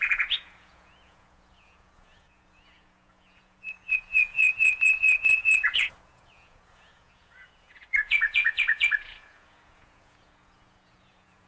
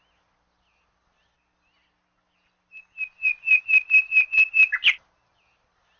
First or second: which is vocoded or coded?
first